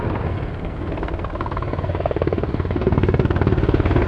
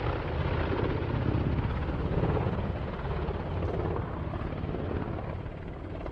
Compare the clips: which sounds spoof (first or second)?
first